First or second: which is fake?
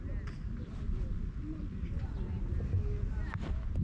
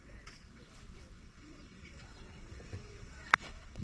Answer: second